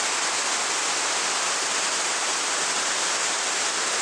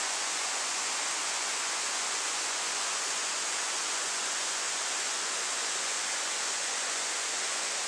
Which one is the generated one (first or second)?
second